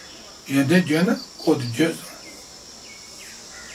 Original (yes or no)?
yes